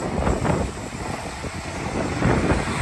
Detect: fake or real real